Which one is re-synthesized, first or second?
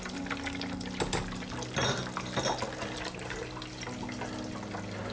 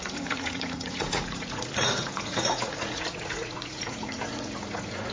second